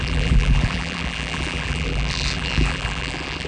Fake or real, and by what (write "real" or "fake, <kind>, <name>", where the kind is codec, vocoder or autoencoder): fake, vocoder, BigVGAN v2